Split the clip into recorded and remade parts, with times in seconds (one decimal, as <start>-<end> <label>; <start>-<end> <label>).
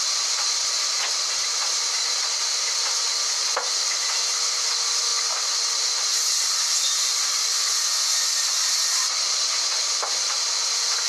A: 0.0-11.1 recorded